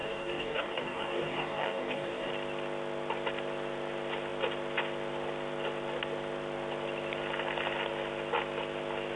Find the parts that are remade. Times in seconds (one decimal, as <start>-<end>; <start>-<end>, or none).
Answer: 0.0-2.3